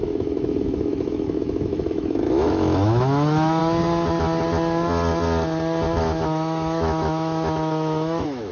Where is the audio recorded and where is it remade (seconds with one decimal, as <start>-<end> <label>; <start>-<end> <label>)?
0.0-3.6 remade; 3.6-6.0 recorded; 6.0-8.5 remade